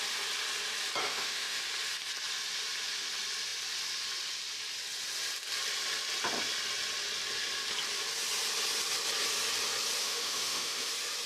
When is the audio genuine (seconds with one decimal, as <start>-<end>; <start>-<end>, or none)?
0.0-1.0; 1.6-10.0; 10.9-11.3